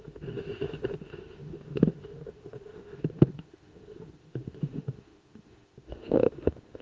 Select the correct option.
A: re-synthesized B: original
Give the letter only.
A